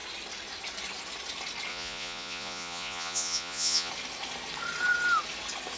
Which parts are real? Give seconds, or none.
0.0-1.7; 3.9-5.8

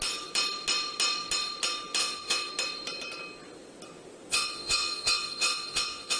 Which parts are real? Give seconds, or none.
0.0-2.0; 2.5-4.3

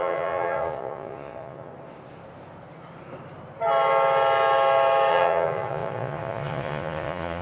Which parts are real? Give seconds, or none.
1.7-5.1

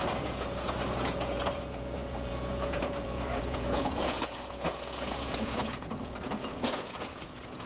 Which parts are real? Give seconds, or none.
none

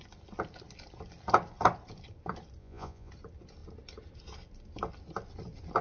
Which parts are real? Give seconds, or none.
0.0-2.6; 3.1-5.8